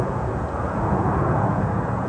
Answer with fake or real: fake